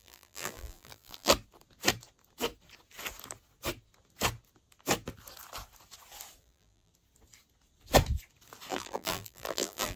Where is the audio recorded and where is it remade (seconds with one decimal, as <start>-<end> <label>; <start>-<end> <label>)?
0.0-1.3 remade; 1.3-6.4 recorded; 6.4-6.9 remade; 6.9-8.7 recorded; 8.7-10.0 remade